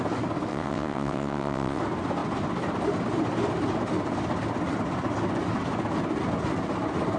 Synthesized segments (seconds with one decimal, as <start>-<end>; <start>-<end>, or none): 0.5-1.8